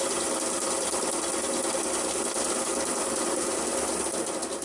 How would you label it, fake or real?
real